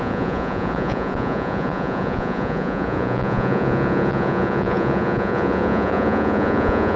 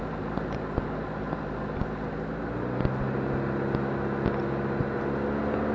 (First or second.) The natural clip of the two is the second